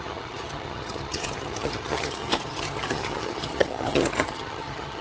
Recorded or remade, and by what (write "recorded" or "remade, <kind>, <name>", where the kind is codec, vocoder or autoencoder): remade, vocoder, HiFi-GAN